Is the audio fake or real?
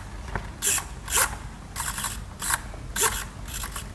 real